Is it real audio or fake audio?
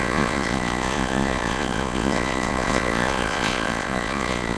fake